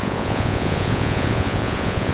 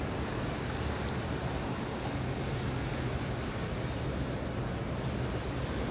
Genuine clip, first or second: second